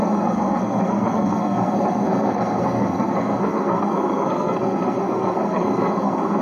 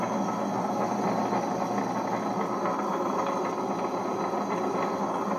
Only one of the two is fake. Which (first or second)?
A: first